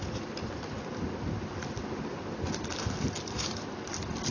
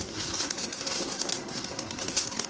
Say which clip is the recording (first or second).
first